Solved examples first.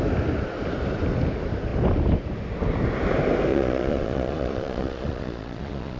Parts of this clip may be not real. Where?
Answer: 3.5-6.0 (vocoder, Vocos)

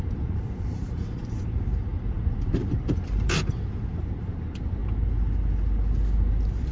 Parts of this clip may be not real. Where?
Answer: 0.0-4.8 (vocoder, BigVGAN v2); 6.3-6.7